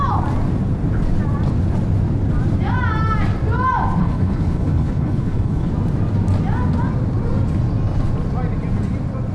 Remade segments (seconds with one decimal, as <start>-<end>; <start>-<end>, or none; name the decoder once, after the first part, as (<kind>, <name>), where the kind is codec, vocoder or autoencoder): 4.0-5.7 (codec, HILCodec)